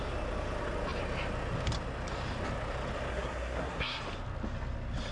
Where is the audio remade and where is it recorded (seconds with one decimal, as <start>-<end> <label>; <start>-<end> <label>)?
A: 0.0-3.1 recorded; 3.1-4.0 remade; 4.0-5.1 recorded